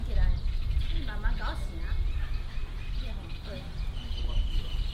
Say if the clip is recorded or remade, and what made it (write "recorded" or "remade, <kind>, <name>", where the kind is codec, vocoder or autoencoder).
recorded